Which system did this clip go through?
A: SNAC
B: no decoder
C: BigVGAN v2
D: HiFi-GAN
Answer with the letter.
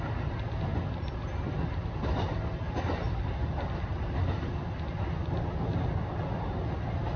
B